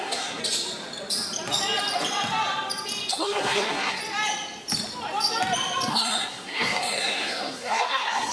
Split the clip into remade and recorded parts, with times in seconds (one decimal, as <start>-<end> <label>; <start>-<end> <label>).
0.0-0.4 remade; 0.4-3.1 recorded; 3.1-4.0 remade; 4.0-5.9 recorded; 5.9-8.3 remade